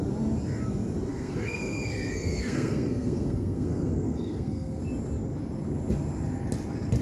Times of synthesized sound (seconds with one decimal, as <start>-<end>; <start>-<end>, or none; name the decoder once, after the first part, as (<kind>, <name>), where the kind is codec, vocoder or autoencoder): 1.1-4.8 (codec, SNAC)

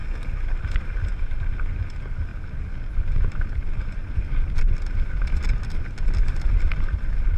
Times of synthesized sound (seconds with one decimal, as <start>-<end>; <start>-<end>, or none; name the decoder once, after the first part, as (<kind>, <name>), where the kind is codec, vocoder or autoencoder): none

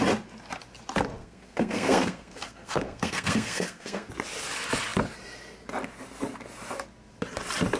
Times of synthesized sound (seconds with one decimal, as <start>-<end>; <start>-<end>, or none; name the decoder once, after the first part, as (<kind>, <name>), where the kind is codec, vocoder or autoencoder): 1.2-4.1 (codec, SNAC)

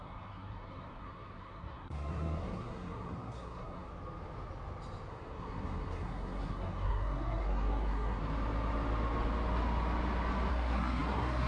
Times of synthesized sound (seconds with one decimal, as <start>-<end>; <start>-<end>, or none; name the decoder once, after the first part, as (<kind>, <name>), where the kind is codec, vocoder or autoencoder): 0.0-3.9 (codec, SNAC); 5.1-8.2; 10.5-11.5